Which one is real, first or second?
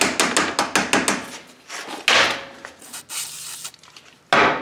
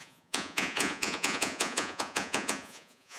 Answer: first